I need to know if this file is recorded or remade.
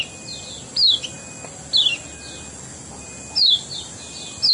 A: recorded